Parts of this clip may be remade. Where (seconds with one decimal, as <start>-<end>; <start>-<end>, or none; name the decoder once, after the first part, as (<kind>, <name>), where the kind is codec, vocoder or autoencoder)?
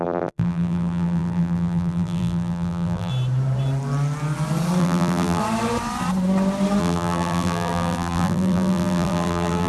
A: 0.0-3.1 (vocoder, BigVGAN v2); 4.8-5.4; 6.8-9.7